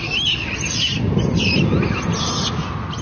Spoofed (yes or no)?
no